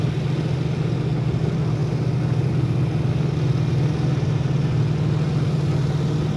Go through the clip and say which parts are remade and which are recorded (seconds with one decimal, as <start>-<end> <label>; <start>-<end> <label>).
0.0-6.4 recorded